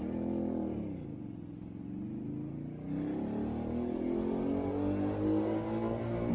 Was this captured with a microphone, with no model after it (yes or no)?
yes